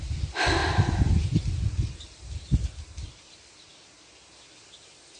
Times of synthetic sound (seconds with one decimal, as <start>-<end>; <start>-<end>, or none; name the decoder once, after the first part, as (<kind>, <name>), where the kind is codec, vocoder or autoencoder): none